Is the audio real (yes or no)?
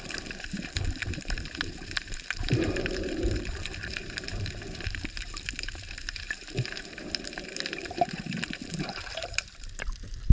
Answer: no